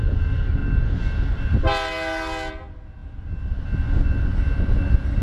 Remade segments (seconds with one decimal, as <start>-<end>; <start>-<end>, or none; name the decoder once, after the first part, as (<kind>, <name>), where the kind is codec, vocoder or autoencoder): none

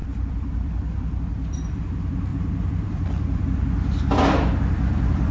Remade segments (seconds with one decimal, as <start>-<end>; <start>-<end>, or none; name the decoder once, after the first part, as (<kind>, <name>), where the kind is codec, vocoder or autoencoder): 0.0-1.8 (vocoder, BigVGAN v2); 2.3-5.3

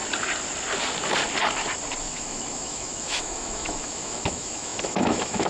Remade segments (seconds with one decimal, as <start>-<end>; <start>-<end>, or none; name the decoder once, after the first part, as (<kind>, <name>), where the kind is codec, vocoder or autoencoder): 2.0-5.5 (autoencoder, DAC-VAE)

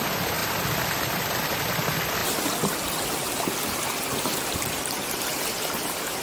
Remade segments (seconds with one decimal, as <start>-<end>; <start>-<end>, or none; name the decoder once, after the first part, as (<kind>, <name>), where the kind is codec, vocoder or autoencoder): none

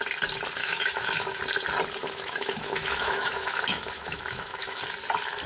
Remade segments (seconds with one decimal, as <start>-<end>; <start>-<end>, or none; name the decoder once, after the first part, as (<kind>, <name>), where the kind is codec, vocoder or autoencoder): 0.6-1.4 (autoencoder, DAC-VAE); 2.0-4.8